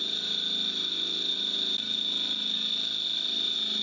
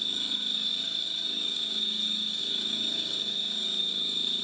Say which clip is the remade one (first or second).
second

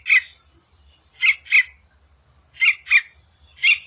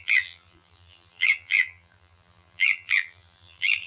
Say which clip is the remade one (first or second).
second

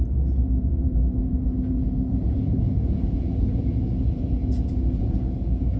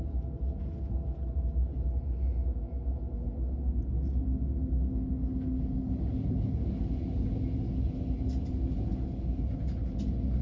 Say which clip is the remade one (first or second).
first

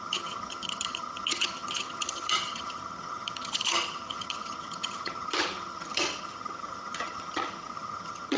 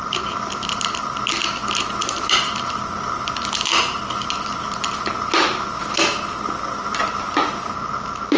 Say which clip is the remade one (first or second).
first